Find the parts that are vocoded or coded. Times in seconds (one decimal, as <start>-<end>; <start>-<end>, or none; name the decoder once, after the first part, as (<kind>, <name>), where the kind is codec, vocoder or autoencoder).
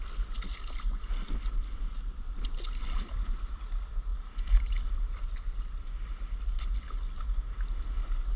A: none